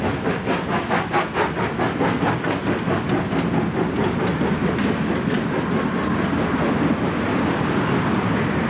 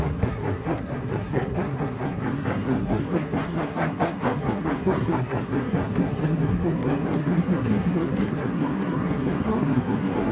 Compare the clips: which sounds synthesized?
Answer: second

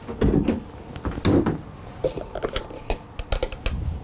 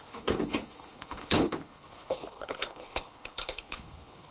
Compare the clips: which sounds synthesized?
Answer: second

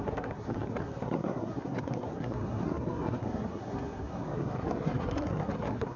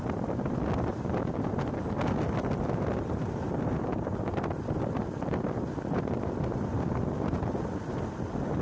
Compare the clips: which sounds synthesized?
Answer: first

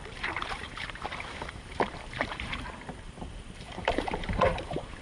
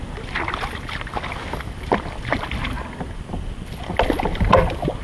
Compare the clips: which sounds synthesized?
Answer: first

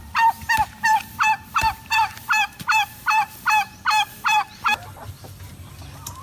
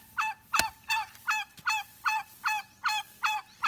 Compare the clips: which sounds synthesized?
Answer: first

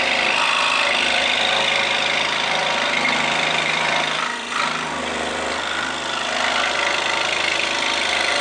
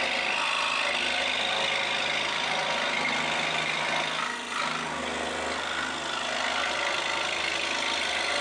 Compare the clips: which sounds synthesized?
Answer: first